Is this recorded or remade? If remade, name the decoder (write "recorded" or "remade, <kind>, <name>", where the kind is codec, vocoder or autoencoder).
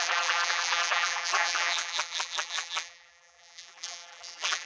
remade, vocoder, BigVGAN v2